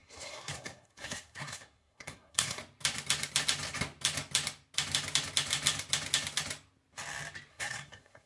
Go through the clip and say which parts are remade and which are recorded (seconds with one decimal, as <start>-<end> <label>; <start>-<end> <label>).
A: 0.0-2.6 remade; 2.6-7.5 recorded; 7.5-8.3 remade